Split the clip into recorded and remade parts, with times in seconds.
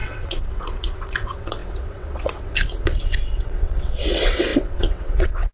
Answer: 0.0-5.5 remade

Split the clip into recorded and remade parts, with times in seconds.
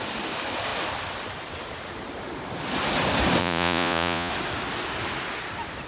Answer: 0.0-3.4 recorded; 3.4-4.3 remade; 4.3-5.9 recorded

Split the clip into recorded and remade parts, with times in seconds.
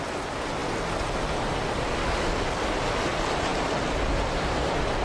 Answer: 0.0-2.0 recorded; 2.0-2.6 remade; 2.6-5.0 recorded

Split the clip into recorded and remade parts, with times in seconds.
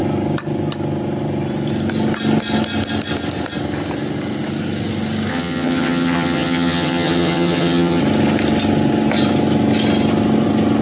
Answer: 0.0-5.3 recorded; 5.3-8.0 remade; 8.0-10.8 recorded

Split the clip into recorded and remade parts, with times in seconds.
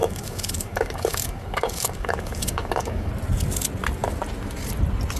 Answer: 0.0-3.1 remade; 3.1-5.2 recorded